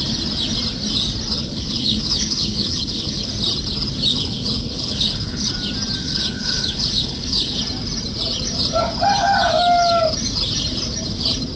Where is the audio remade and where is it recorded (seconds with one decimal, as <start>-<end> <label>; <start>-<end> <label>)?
0.0-1.4 recorded; 1.4-3.3 remade; 3.3-4.1 recorded; 4.1-5.5 remade; 5.5-6.0 recorded; 6.0-7.6 remade; 7.6-11.6 recorded